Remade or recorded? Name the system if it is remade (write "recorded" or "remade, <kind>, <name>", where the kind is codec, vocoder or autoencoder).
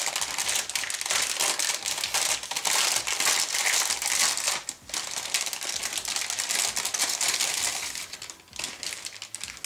recorded